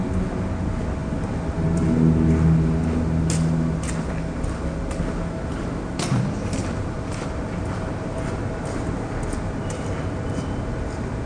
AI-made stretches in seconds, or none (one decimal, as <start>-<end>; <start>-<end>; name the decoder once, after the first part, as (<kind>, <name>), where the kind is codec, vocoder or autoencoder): none